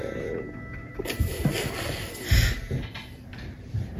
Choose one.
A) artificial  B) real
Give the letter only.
B